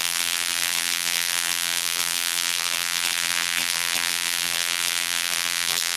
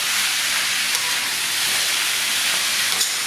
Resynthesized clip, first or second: first